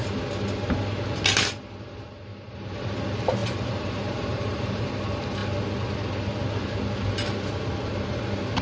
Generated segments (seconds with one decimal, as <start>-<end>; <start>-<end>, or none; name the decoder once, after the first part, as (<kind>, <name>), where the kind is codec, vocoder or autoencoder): 2.3-3.0 (vocoder, BigVGAN v2); 3.4-4.9